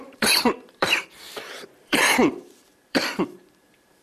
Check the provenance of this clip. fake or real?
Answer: fake